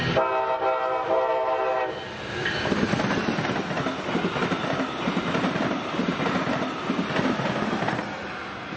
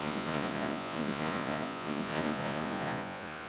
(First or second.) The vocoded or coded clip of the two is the second